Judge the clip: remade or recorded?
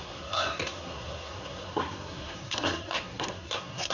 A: remade